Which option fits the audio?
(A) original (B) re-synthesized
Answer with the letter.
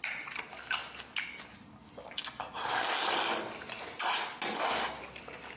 A